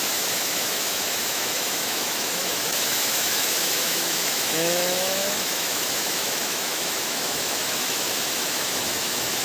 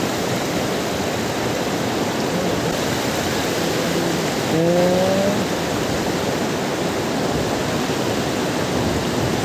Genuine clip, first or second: second